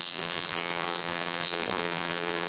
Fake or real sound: fake